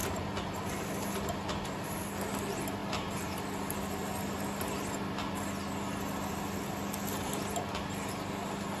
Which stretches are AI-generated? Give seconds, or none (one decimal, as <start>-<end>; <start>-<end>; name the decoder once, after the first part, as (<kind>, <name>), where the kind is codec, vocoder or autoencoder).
none